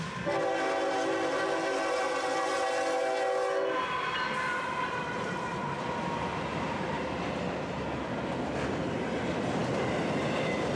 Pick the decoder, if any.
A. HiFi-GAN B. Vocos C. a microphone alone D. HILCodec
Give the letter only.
C